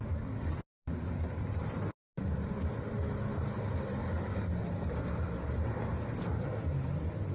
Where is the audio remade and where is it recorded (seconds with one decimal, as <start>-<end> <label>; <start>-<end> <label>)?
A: 0.0-7.3 recorded